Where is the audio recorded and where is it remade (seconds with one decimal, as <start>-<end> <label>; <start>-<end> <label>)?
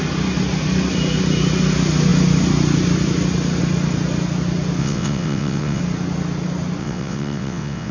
0.0-4.8 recorded; 4.8-5.8 remade; 5.8-6.8 recorded; 6.8-7.9 remade